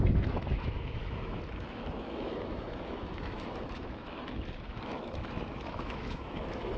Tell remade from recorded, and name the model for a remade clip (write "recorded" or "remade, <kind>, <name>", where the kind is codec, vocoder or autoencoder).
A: remade, autoencoder, DAC-VAE